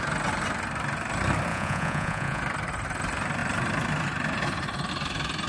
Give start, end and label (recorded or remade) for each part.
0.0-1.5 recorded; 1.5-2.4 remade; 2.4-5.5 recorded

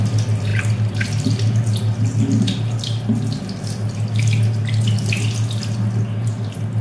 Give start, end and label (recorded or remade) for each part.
0.0-6.8 recorded

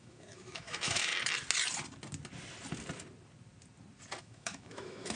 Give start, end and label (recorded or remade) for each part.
0.0-1.1 remade; 1.1-4.2 recorded; 4.2-5.2 remade

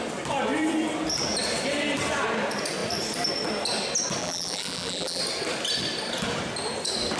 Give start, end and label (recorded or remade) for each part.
0.0-4.2 recorded; 4.2-5.2 remade; 5.2-7.2 recorded

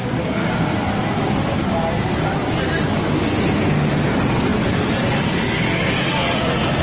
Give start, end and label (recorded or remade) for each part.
0.0-4.5 recorded; 4.5-5.2 remade; 5.2-6.8 recorded

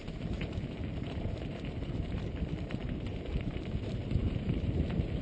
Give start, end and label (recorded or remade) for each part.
0.0-5.2 remade

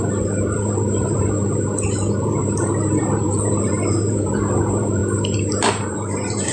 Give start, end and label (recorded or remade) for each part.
0.0-2.4 remade; 2.4-3.0 recorded; 3.0-5.0 remade; 5.0-5.7 recorded; 5.7-6.5 remade

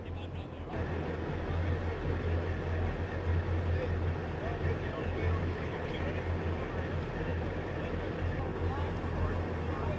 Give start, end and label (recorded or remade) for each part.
0.0-5.5 recorded; 5.5-6.0 remade; 6.0-10.0 recorded